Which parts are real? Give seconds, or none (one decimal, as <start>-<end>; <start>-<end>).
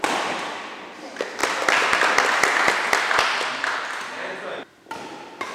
0.0-5.5